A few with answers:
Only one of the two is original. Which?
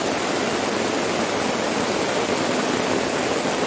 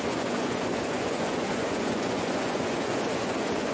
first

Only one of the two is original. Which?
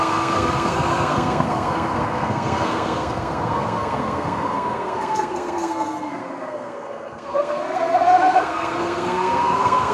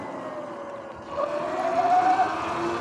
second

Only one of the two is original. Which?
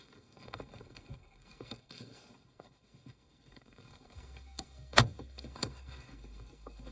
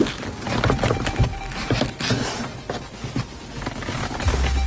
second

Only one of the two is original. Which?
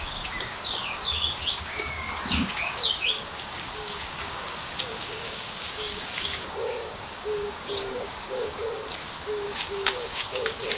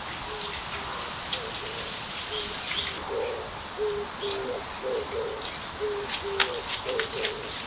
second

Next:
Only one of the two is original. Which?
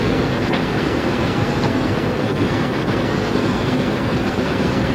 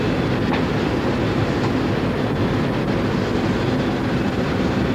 second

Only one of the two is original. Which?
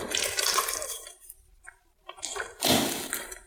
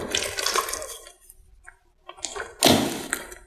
second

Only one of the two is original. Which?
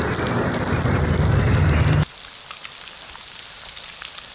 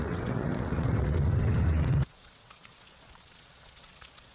first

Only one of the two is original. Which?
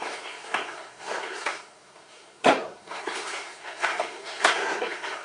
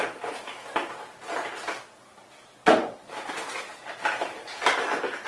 second